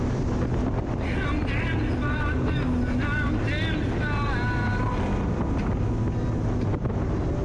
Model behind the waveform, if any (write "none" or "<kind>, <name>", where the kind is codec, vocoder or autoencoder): none